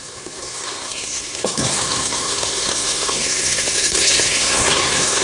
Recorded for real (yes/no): no